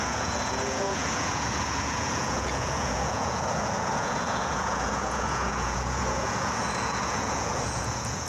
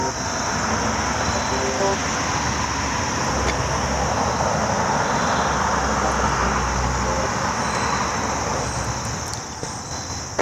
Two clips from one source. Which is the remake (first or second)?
first